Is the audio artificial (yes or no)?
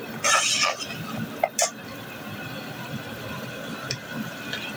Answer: no